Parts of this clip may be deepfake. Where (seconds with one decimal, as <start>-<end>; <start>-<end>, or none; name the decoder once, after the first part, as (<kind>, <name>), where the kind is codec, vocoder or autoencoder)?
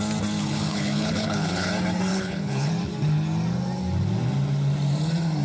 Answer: 0.4-1.7 (codec, HILCodec); 2.1-2.7